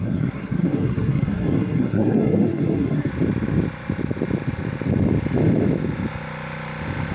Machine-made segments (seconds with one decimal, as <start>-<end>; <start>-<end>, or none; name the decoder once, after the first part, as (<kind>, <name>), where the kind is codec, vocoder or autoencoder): 0.0-3.1 (codec, SNAC)